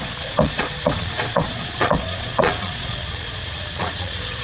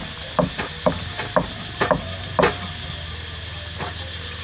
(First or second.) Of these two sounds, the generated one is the first